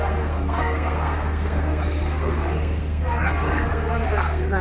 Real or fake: fake